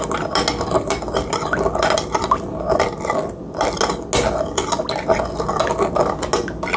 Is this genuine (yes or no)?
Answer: yes